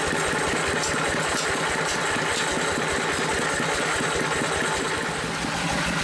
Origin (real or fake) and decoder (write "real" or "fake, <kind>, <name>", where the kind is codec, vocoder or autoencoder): real